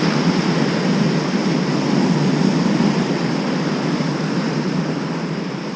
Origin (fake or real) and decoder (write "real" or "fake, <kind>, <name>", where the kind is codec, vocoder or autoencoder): real